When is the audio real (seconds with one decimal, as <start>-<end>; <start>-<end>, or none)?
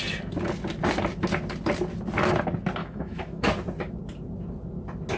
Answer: 0.0-2.8; 3.5-5.2